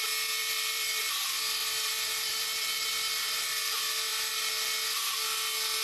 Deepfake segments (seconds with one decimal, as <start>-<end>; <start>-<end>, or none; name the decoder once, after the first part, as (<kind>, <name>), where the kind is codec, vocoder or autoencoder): 0.4-1.0 (vocoder, BigVGAN v2); 1.6-4.3